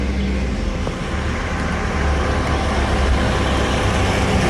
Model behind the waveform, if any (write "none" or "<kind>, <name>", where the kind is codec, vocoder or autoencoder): none